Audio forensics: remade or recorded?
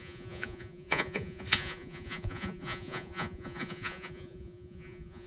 remade